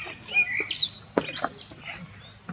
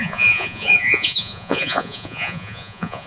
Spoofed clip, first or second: second